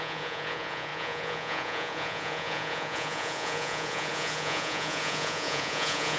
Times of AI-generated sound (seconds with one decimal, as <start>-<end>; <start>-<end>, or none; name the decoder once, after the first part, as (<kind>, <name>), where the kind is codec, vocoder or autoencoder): 0.0-6.2 (vocoder, Vocos)